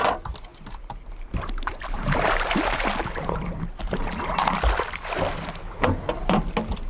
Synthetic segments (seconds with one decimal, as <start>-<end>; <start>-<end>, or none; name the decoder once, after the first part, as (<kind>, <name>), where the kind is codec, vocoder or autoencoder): 0.5-4.6 (vocoder, BigVGAN v2)